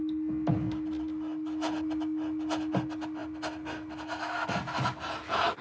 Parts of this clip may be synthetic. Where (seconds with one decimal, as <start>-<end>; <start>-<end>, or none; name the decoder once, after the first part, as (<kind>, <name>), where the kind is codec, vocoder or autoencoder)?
none